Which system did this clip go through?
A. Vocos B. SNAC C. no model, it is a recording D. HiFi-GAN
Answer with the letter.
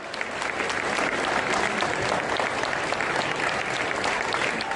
C